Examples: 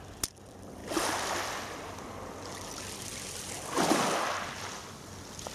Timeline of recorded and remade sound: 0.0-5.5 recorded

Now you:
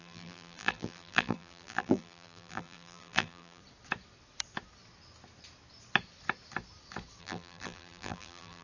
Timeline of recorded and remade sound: 0.0-3.6 remade; 3.6-7.2 recorded; 7.2-8.6 remade

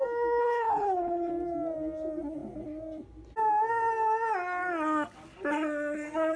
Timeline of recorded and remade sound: 0.0-0.4 recorded; 0.4-1.3 remade; 1.3-6.4 recorded

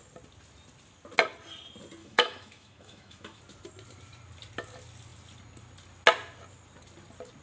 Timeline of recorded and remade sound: 0.0-2.0 recorded; 2.0-3.4 remade; 3.4-7.4 recorded

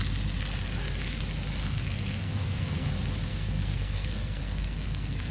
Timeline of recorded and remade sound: 0.0-1.6 recorded; 1.6-2.9 remade; 2.9-3.3 recorded; 3.3-5.3 remade